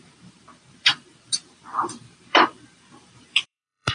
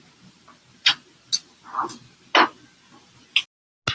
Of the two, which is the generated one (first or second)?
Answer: first